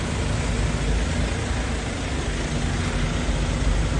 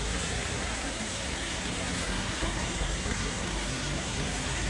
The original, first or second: first